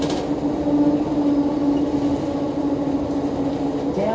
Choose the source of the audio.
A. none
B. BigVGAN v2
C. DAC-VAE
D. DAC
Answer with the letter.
A